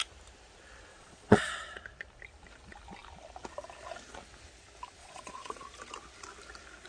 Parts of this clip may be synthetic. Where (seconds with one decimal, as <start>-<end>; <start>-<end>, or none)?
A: 0.9-1.8; 5.0-5.6